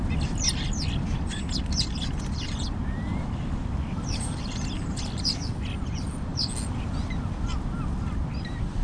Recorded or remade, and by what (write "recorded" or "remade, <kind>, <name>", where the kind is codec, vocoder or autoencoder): recorded